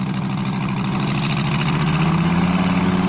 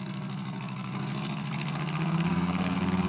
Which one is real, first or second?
first